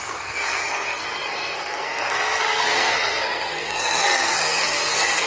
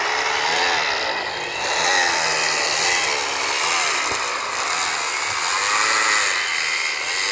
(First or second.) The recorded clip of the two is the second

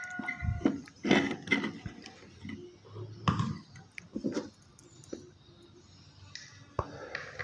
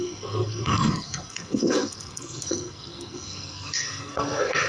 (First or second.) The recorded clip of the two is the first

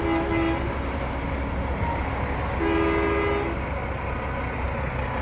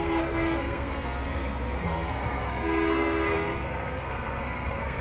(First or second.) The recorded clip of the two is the first